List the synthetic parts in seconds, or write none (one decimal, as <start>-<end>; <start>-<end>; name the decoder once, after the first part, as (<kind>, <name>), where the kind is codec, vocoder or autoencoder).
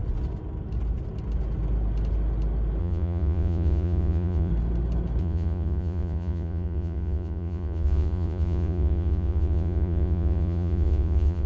2.8-4.5 (vocoder, Vocos); 5.2-11.5